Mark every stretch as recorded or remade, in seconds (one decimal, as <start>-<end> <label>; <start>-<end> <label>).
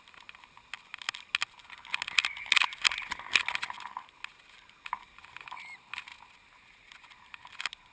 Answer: 0.0-7.9 recorded